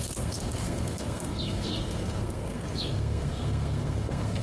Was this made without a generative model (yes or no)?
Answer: no